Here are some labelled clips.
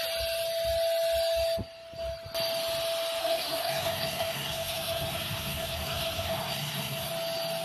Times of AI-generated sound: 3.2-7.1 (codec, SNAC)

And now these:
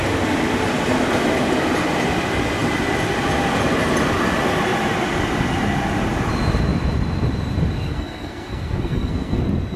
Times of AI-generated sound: 7.9-9.4 (codec, SNAC)

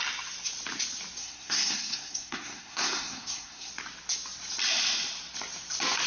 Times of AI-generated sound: 1.2-3.7 (codec, SNAC)

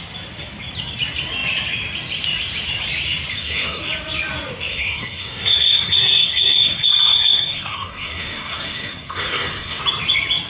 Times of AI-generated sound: 3.3-3.8 (codec, SNAC); 4.7-9.8

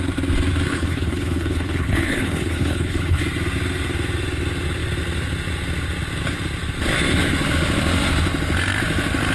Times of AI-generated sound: 0.7-3.2 (codec, HILCodec)